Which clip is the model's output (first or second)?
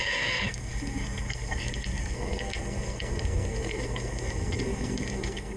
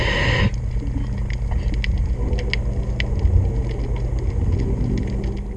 first